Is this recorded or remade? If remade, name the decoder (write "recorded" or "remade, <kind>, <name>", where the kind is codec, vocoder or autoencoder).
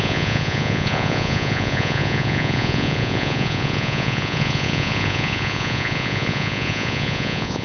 remade, vocoder, Vocos